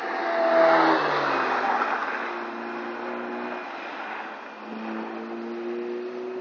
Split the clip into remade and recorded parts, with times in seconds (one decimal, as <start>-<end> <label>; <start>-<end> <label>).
0.0-6.4 recorded